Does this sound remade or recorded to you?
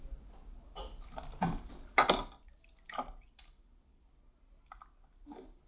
recorded